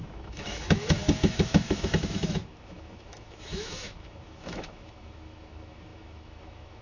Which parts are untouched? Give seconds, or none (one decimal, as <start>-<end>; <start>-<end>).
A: none